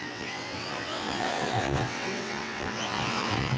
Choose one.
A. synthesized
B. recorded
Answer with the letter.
A